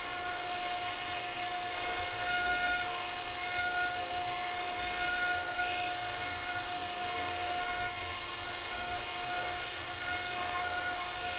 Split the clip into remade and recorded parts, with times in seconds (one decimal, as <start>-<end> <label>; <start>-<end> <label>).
0.0-11.4 remade